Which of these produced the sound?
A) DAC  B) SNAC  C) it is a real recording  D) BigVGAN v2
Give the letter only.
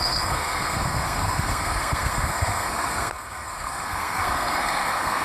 B